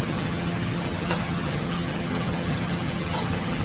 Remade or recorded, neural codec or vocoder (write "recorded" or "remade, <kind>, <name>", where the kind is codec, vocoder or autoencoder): remade, vocoder, HiFi-GAN